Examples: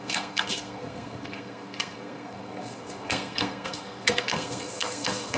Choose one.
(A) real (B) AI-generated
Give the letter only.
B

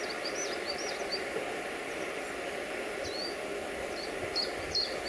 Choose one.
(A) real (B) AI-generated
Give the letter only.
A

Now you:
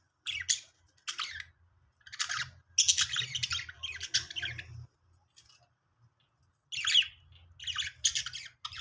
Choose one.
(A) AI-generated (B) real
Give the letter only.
B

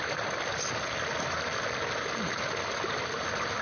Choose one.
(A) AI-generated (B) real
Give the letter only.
B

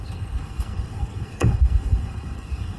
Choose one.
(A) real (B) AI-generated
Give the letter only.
B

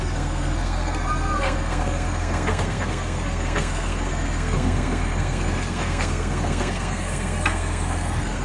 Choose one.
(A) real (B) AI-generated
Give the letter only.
B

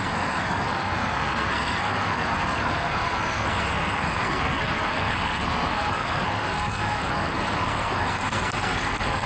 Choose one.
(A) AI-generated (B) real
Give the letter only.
A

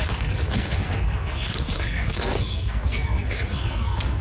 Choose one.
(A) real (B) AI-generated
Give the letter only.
B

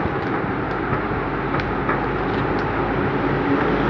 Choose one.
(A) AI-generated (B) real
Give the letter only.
B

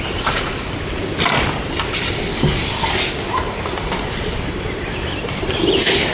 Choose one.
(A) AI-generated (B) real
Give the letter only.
B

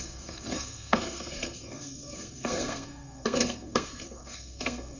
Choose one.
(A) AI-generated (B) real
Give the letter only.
A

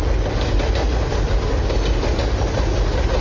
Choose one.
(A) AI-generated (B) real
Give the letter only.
B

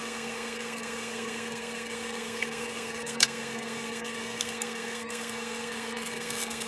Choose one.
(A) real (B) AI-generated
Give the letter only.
B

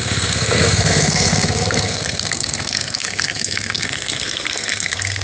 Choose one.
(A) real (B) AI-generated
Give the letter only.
B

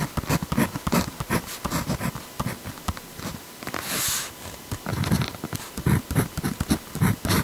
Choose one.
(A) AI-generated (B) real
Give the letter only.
B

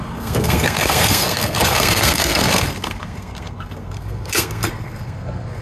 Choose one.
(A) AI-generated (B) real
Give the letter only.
A